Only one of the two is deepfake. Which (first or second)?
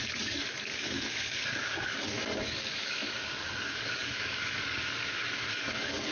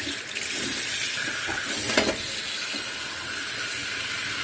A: first